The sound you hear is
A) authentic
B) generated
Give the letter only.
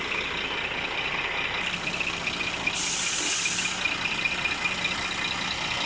A